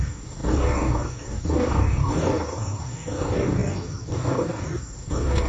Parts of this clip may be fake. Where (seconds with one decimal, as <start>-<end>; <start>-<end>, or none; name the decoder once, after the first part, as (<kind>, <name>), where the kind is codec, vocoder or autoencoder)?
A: 0.0-5.5 (codec, DAC)